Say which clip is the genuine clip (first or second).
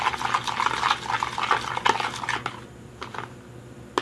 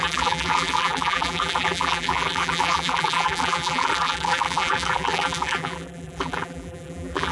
first